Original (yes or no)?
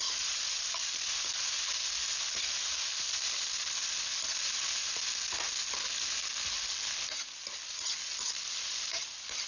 yes